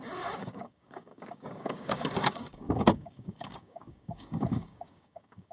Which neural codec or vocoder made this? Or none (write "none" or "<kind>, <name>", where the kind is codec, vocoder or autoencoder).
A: codec, DAC